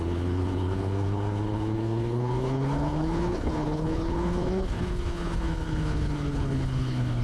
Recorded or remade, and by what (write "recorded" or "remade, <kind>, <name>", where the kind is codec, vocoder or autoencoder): remade, codec, HILCodec